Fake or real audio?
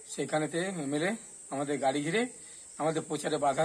real